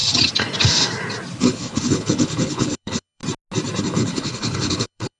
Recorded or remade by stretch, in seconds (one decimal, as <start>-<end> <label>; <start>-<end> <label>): 0.0-1.4 recorded; 1.4-3.2 remade; 3.2-3.8 recorded; 3.8-5.2 remade